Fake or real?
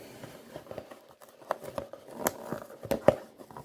real